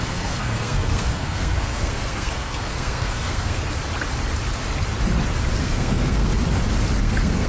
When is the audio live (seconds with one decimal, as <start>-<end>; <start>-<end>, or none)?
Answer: 3.6-5.6; 6.3-7.0